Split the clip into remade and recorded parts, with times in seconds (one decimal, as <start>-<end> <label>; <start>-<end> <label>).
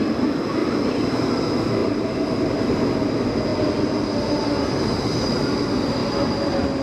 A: 0.0-0.6 recorded; 0.6-1.4 remade; 1.4-3.5 recorded; 3.5-4.8 remade; 4.8-6.8 recorded